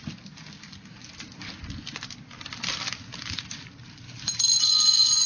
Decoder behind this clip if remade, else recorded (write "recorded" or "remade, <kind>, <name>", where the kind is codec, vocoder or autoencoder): recorded